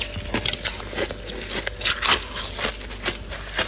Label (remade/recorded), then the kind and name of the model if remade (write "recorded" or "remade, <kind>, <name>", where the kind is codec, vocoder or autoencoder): recorded